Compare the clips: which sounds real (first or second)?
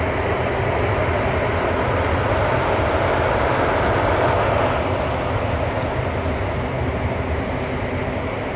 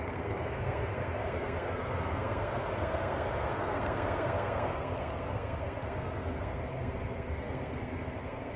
first